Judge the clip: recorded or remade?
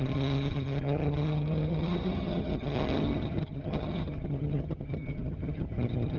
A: remade